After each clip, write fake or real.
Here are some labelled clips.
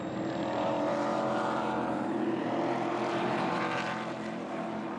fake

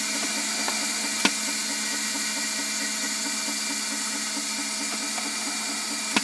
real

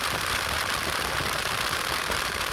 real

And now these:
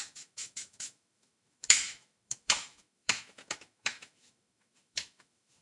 fake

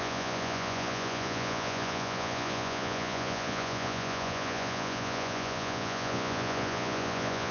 fake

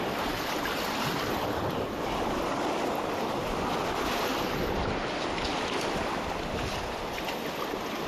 real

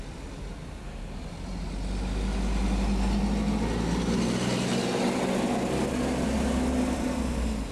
real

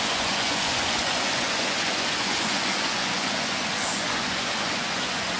fake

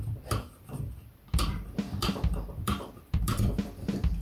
fake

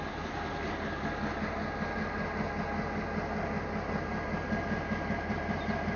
real